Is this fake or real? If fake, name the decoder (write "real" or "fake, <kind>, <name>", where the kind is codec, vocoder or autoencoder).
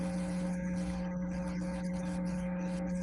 fake, codec, HILCodec